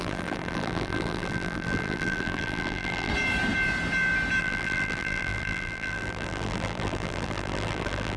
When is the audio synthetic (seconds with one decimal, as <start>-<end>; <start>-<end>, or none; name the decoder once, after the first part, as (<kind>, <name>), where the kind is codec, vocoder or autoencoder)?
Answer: 0.0-3.1 (vocoder, BigVGAN v2); 4.4-8.2